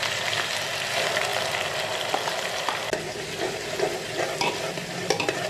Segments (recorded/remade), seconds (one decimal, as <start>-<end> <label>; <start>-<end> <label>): 0.0-5.5 recorded